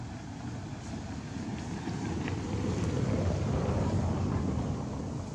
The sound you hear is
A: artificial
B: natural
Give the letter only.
B